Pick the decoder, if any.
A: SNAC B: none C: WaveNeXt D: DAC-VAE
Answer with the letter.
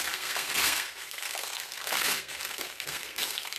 A